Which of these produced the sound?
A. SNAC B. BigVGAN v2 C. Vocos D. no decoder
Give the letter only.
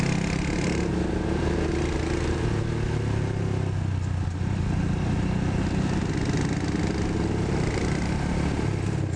D